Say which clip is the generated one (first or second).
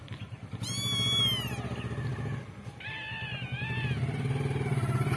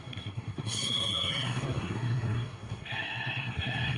second